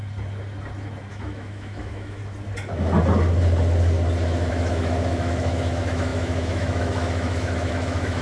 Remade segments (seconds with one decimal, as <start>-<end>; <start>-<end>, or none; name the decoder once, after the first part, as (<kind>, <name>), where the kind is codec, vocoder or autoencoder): 1.1-2.2 (autoencoder, DAC-VAE); 4.5-8.2